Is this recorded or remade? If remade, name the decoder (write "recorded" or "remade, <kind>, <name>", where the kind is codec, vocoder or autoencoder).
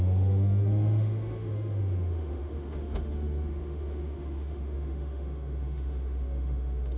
remade, autoencoder, DAC-VAE